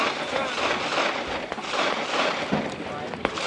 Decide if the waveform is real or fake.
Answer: real